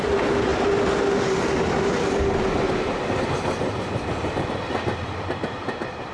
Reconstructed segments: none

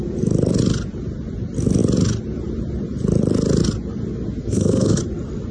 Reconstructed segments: 4.4-5.0

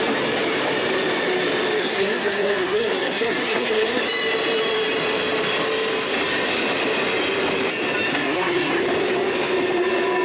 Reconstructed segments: 1.8-4.0; 8.1-8.8

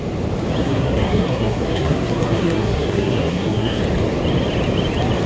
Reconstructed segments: 0.6-3.8

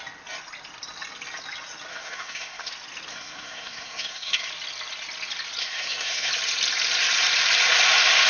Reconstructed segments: 1.9-2.7; 3.1-4.5; 5.6-6.3

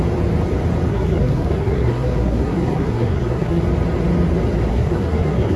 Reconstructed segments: 0.9-3.6; 4.7-5.6

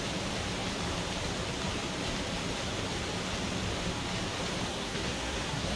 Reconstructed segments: 4.7-5.8

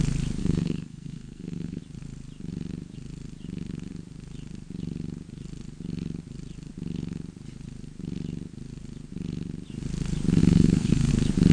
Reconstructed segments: 0.4-1.8; 10.4-11.1